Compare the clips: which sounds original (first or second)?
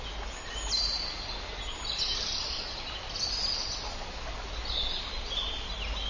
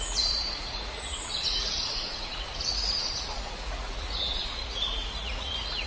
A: first